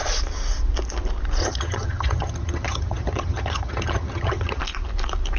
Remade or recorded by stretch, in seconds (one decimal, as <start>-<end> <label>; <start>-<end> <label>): 0.0-1.4 recorded; 1.4-4.6 remade; 4.6-5.4 recorded